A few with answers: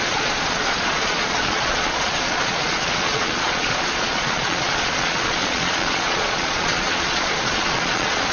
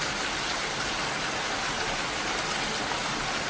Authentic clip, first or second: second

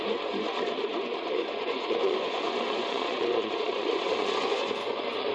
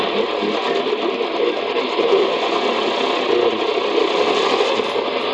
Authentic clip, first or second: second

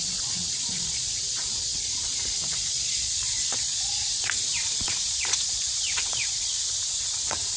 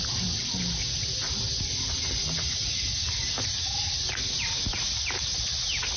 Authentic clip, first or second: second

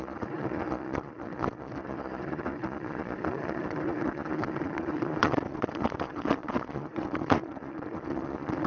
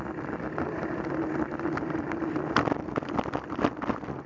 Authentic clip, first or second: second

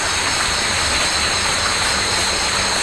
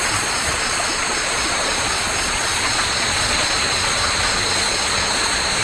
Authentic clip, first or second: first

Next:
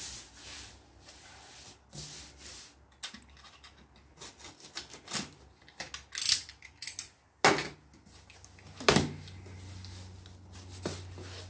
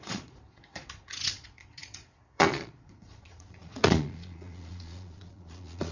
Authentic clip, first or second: first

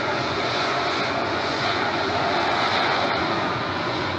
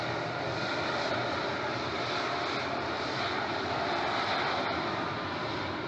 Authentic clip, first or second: second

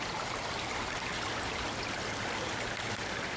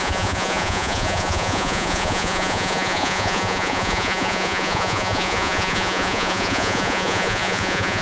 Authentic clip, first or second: first